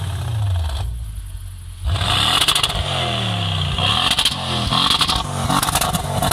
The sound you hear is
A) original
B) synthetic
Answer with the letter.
A